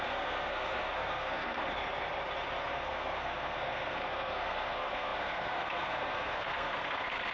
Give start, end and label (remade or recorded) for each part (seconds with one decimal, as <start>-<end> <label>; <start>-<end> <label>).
0.0-1.6 remade; 1.6-2.7 recorded; 2.7-7.3 remade